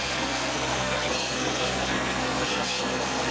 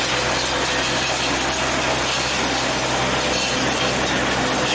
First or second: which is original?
second